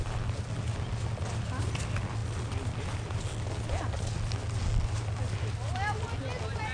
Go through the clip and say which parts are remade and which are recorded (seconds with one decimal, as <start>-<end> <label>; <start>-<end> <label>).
0.0-6.7 recorded